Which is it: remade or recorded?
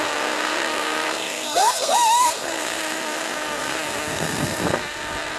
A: remade